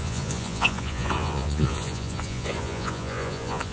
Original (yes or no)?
no